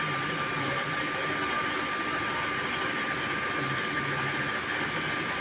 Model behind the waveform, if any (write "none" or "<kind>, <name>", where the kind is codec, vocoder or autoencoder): none